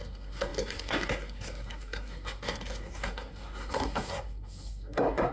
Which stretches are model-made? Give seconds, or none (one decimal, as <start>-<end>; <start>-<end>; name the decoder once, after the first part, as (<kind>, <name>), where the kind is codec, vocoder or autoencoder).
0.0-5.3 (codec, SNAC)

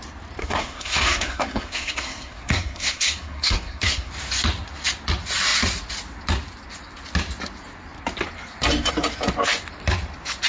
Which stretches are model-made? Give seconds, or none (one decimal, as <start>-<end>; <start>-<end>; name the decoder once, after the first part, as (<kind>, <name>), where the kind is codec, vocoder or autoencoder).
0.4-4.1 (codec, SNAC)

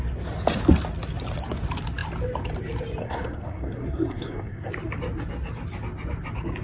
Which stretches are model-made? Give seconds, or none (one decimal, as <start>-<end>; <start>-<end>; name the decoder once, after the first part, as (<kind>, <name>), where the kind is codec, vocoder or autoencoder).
3.0-4.7 (codec, SNAC)

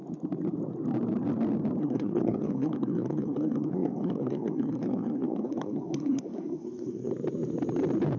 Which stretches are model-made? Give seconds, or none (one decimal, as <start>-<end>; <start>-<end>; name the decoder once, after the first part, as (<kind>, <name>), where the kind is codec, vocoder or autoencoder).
1.8-7.1 (codec, SNAC)

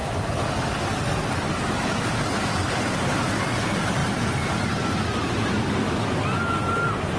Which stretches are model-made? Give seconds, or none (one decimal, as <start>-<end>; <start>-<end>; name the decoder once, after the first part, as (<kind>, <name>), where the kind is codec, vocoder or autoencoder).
none

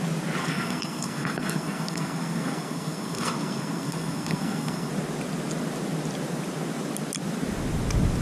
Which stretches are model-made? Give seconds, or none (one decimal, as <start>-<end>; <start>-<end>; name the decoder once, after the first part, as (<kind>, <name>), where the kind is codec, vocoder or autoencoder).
0.4-4.9 (codec, SNAC)

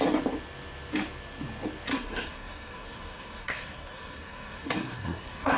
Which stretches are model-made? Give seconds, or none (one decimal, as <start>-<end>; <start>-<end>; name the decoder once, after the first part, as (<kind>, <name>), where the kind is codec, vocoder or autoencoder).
1.9-5.6 (codec, SNAC)